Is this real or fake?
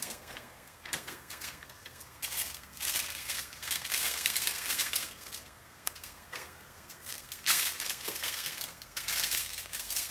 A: fake